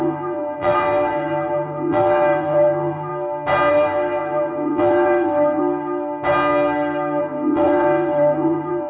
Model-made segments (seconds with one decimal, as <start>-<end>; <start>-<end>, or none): 0.0-3.1; 3.7-5.6; 7.2-8.9